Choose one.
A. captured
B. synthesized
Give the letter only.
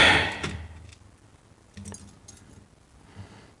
A